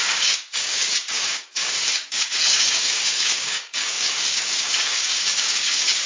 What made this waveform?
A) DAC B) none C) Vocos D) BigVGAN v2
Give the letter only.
A